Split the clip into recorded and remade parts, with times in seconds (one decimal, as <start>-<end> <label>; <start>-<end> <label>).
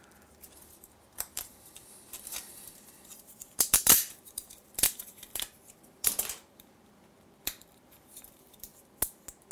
0.0-8.7 remade; 8.7-9.5 recorded